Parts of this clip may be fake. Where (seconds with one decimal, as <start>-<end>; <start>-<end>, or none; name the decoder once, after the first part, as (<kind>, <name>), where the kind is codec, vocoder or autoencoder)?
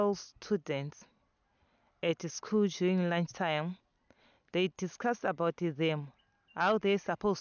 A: none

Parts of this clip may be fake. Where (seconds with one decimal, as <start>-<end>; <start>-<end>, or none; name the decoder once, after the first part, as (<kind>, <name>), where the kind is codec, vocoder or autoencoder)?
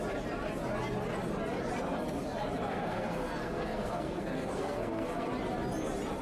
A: 2.7-5.3 (codec, SNAC)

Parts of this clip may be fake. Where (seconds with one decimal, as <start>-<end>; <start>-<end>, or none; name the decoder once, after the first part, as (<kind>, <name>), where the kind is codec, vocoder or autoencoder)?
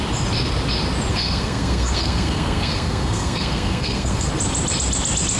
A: 1.1-4.3 (codec, SNAC)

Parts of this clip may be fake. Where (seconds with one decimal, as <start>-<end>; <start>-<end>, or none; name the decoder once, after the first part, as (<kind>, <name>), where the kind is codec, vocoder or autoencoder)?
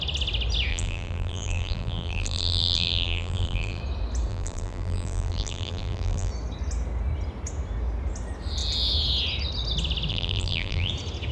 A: 0.7-3.8 (vocoder, BigVGAN v2); 4.3-6.3; 10.1-10.9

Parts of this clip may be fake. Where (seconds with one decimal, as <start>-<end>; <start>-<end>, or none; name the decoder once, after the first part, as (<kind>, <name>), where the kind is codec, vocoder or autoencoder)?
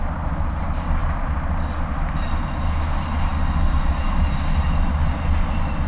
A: none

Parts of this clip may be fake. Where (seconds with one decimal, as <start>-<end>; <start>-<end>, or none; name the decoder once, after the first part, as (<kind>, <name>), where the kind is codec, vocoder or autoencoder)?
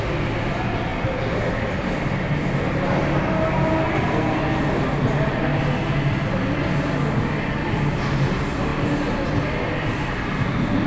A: 3.8-4.4 (codec, SNAC)